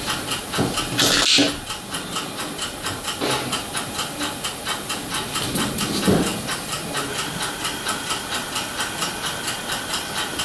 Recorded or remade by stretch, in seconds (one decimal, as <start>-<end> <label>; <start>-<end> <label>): 0.0-10.4 recorded